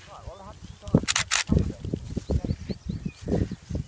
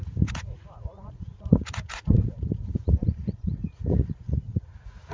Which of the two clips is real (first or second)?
first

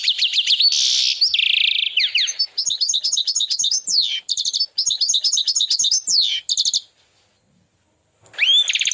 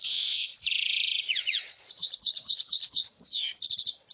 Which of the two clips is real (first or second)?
first